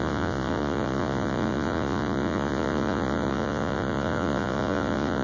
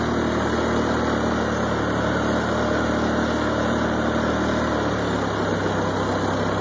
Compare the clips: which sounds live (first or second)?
second